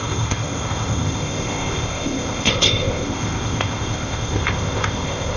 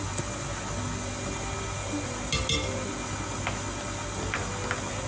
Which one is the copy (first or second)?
first